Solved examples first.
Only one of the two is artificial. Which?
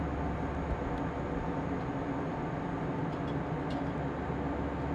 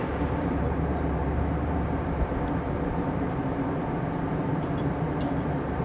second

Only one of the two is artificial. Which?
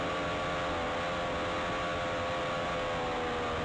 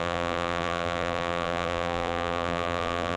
second